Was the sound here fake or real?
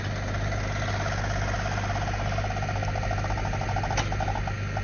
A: real